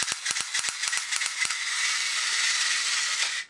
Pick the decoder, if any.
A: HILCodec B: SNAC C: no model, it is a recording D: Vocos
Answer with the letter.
C